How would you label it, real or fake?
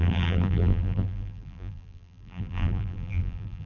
fake